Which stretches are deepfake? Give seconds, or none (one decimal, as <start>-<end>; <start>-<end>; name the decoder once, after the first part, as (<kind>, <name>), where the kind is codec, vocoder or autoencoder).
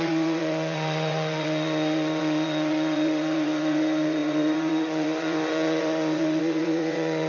0.0-7.3 (vocoder, WaveNeXt)